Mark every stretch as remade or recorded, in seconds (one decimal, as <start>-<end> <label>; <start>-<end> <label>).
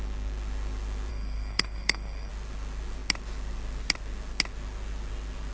0.0-1.1 recorded; 1.1-2.3 remade; 2.3-5.5 recorded